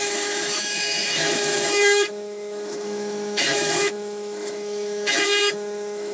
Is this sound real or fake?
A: fake